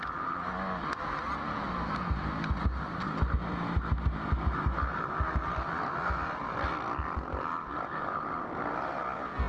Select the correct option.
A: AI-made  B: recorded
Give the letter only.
B